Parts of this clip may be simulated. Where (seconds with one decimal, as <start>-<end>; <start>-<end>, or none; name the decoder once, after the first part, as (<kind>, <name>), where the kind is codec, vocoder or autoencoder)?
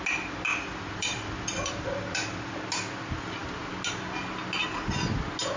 0.5-2.6 (vocoder, BigVGAN v2)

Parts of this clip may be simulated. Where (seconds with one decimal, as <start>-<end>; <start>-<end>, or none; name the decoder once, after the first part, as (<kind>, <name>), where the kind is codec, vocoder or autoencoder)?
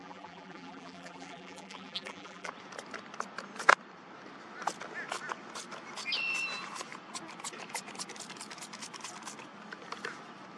0.0-2.5 (vocoder, BigVGAN v2)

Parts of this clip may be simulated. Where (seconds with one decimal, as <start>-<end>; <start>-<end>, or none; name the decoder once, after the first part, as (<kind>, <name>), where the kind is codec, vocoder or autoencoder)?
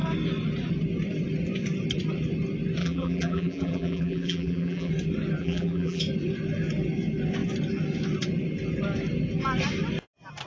2.8-4.9 (vocoder, BigVGAN v2); 5.4-6.0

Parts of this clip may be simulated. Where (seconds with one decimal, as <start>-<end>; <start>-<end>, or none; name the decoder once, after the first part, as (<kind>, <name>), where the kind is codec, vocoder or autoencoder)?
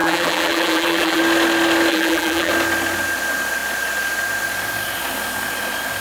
0.0-1.2 (vocoder, BigVGAN v2); 1.9-2.5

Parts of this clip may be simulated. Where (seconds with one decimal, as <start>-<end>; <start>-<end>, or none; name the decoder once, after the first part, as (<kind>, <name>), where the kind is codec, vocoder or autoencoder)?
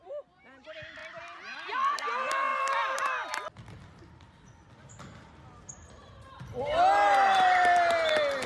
none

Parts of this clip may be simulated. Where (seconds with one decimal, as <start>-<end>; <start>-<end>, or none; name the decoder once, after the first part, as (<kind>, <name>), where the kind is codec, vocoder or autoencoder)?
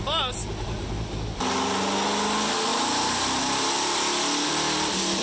2.7-3.4 (vocoder, BigVGAN v2)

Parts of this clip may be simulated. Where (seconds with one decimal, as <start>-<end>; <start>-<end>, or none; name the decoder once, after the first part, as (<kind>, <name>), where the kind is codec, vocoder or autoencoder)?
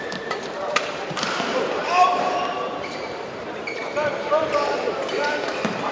0.0-5.9 (vocoder, BigVGAN v2)